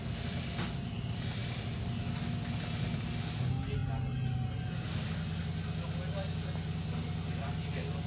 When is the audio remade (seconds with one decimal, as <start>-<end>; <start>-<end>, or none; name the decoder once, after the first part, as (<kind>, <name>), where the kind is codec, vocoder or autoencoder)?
none

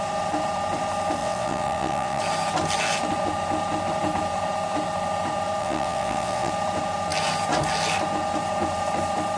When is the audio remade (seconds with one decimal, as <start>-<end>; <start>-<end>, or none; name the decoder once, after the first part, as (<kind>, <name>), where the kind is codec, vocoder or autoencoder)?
1.2-2.2 (vocoder, WaveNeXt); 5.6-6.5

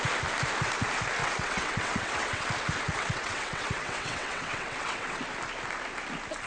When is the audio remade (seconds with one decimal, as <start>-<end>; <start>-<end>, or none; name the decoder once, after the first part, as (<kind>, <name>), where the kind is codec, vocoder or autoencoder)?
1.2-2.5 (vocoder, WaveNeXt); 3.0-5.2

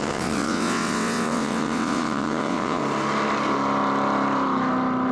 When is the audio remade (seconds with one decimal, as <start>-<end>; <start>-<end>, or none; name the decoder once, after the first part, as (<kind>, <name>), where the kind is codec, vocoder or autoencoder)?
0.0-2.8 (vocoder, WaveNeXt)

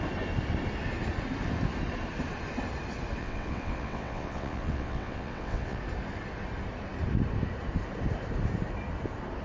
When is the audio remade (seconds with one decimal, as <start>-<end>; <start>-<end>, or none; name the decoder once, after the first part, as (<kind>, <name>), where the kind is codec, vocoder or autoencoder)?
3.2-5.8 (vocoder, WaveNeXt)